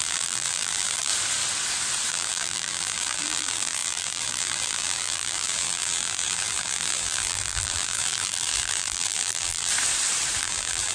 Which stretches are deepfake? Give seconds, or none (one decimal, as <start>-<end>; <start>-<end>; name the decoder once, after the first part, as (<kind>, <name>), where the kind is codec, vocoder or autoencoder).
0.0-1.1 (vocoder, BigVGAN v2); 2.1-9.7; 10.4-10.9